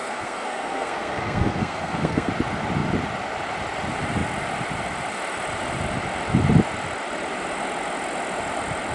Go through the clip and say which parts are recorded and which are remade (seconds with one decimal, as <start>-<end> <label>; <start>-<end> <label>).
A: 0.0-2.3 remade; 2.3-8.9 recorded